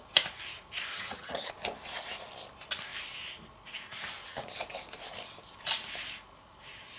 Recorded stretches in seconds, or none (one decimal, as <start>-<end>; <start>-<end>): 0.0-0.9; 1.5-7.0